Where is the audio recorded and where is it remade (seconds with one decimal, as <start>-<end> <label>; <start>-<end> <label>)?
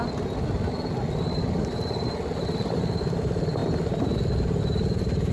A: 0.0-5.3 recorded